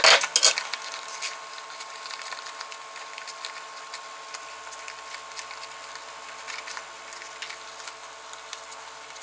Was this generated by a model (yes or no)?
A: no